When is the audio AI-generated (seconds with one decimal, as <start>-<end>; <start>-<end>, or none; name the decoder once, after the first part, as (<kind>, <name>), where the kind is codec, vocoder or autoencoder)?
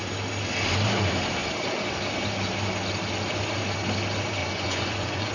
4.4-5.3 (vocoder, Vocos)